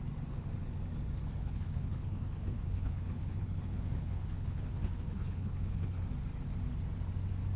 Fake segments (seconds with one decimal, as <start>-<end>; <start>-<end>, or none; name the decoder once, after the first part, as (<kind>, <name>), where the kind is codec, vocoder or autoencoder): 1.4-6.0 (codec, HILCodec)